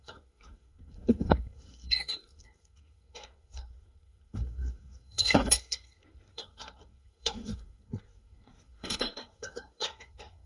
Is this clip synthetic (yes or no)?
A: yes